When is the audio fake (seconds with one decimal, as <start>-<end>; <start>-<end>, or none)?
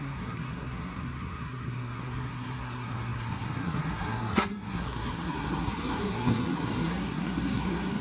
0.0-8.0